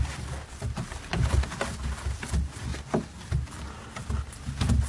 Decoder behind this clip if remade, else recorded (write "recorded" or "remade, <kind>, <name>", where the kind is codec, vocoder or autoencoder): recorded